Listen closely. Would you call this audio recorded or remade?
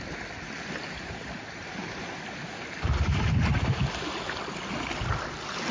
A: recorded